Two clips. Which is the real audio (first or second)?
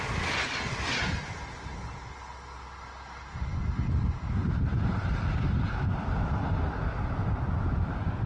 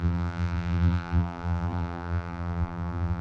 first